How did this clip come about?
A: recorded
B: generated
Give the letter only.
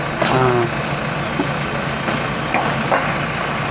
A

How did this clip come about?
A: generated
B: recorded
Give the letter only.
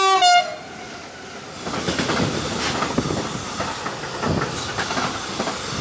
B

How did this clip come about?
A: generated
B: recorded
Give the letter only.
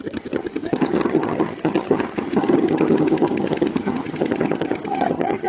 A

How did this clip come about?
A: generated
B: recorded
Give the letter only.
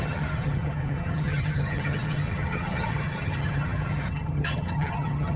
A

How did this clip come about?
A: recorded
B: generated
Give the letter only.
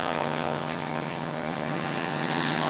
B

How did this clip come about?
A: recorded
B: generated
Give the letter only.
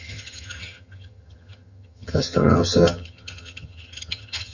B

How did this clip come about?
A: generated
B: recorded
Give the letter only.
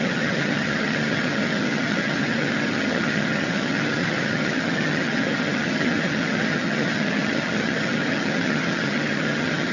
A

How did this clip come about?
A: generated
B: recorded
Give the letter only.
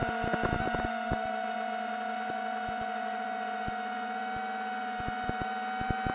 B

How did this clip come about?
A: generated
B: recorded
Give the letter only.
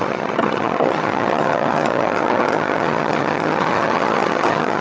A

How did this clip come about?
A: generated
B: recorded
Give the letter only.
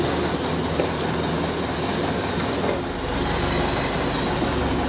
B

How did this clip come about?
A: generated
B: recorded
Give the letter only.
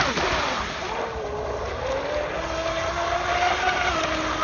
B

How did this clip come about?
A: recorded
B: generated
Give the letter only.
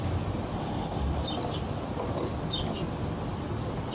A